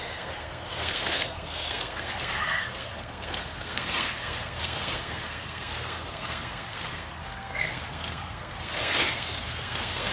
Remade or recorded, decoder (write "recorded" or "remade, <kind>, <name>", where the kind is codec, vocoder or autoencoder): remade, codec, SNAC